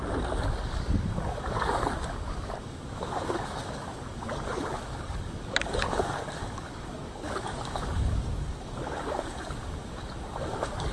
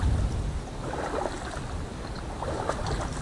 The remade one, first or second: first